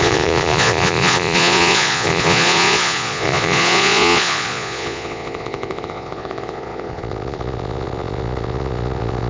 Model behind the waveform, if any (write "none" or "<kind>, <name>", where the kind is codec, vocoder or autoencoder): vocoder, Vocos